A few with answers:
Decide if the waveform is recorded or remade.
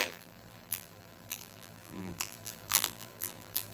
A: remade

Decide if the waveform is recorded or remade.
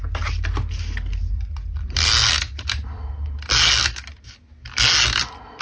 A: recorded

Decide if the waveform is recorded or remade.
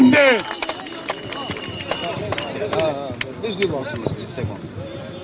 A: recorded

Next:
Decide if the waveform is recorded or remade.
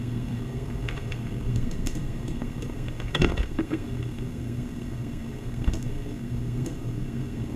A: remade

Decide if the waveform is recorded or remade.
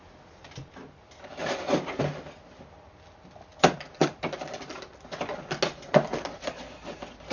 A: recorded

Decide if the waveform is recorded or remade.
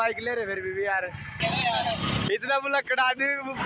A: recorded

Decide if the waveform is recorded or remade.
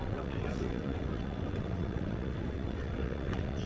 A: remade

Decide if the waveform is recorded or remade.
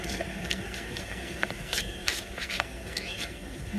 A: remade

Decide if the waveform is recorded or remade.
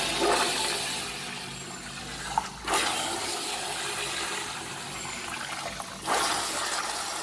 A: recorded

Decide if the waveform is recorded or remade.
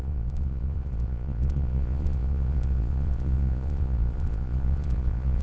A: remade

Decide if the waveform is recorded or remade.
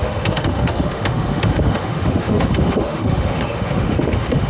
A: remade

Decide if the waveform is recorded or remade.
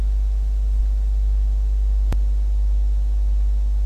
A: recorded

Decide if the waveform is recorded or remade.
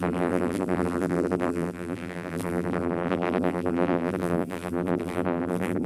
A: remade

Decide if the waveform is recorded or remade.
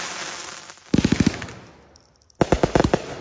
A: recorded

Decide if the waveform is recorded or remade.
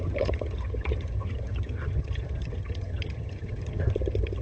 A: remade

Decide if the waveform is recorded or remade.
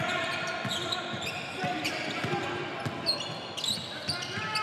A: recorded